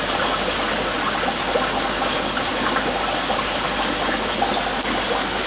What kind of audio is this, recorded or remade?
recorded